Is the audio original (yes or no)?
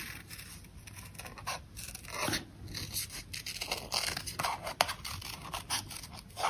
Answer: yes